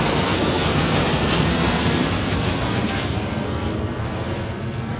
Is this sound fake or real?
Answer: fake